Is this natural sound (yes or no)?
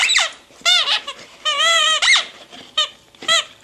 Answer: no